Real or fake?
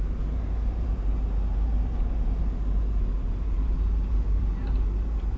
fake